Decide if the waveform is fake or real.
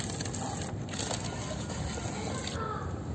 real